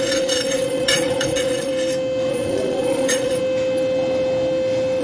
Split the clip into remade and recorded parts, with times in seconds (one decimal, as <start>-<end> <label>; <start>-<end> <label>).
0.0-1.7 remade; 1.7-2.3 recorded; 2.3-3.4 remade; 3.4-5.0 recorded